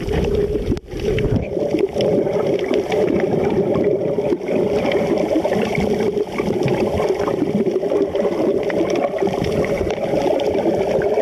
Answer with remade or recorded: remade